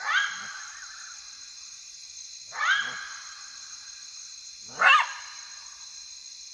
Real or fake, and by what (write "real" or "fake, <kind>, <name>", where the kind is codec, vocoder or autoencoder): real